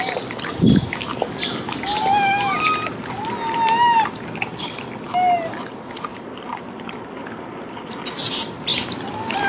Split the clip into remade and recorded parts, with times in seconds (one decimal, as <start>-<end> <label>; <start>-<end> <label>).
0.0-6.1 recorded; 6.1-7.0 remade; 7.0-8.7 recorded; 8.7-9.5 remade